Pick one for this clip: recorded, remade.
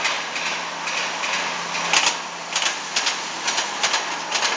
recorded